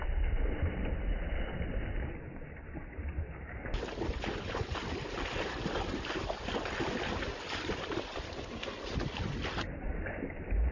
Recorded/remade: recorded